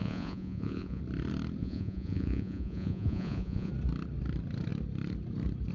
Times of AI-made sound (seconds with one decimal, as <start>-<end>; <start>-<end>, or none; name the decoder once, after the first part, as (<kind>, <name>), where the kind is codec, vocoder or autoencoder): 0.0-1.0 (vocoder, Vocos); 1.6-3.7